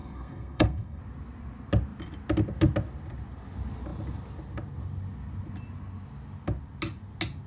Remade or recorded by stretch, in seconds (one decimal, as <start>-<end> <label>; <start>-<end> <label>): 0.0-1.0 remade; 1.0-7.5 recorded